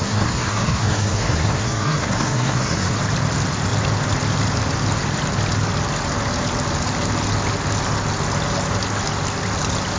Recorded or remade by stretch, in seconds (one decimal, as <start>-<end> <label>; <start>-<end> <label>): 0.0-3.0 remade; 3.0-10.0 recorded